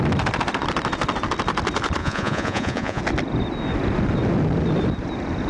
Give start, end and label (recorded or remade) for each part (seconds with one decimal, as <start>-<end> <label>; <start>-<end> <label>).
0.0-2.0 recorded; 2.0-3.0 remade; 3.0-5.5 recorded